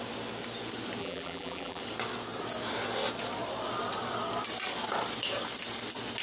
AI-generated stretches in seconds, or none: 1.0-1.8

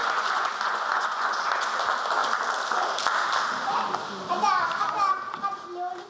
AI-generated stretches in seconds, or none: 0.0-1.8

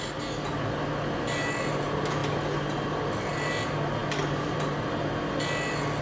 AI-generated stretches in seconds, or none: none